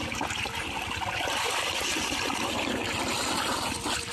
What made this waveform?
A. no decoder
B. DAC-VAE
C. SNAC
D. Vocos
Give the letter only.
A